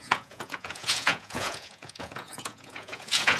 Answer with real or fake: fake